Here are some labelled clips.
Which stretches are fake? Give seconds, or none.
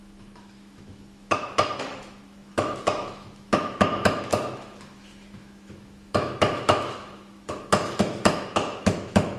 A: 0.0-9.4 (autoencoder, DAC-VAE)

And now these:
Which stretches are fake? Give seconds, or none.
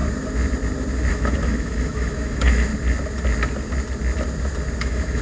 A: 1.1-2.7 (autoencoder, DAC-VAE); 4.8-5.2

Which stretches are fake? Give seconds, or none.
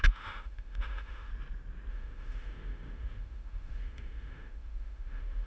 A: 0.0-1.3 (autoencoder, DAC-VAE); 1.9-5.5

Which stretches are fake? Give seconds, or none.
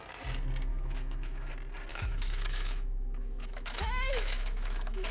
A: 0.7-1.5 (autoencoder, DAC-VAE); 1.9-5.1